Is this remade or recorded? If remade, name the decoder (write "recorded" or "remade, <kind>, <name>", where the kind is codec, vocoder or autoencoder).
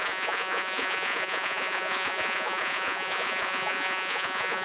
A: remade, vocoder, Vocos